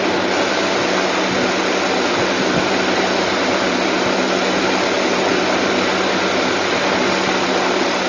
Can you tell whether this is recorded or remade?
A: recorded